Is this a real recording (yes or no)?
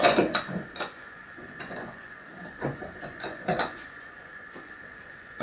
no